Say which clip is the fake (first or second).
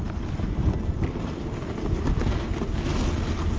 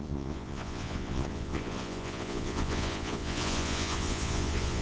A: second